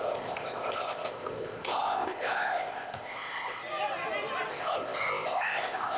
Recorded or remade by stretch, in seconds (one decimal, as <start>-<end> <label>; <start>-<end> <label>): 0.0-3.6 remade; 3.6-4.5 recorded; 4.5-6.0 remade